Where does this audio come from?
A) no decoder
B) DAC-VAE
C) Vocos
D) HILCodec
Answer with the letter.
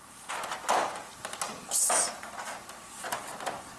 A